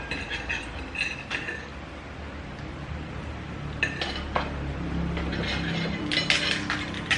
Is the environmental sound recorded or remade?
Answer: recorded